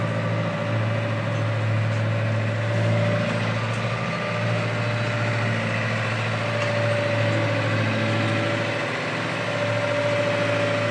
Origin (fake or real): real